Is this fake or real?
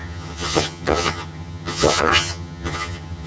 fake